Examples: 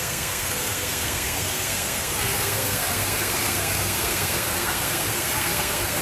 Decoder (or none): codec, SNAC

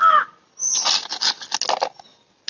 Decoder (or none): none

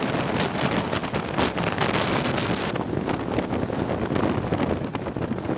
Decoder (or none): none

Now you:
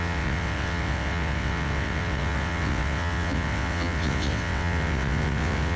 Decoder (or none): vocoder, WaveNeXt